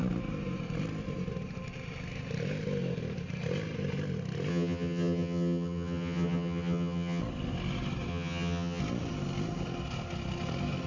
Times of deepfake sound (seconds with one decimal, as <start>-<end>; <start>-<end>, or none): 4.5-7.2; 8.1-8.8